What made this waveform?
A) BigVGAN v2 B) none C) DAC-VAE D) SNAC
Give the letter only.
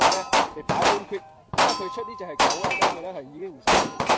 A